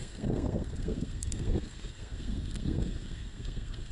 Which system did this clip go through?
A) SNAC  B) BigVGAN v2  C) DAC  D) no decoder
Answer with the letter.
A